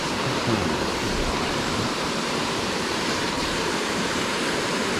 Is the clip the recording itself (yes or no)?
no